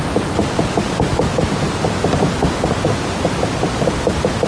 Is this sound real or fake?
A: real